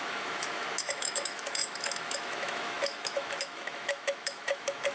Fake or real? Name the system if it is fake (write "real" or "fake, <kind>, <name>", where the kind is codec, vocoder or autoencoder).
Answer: fake, autoencoder, DAC-VAE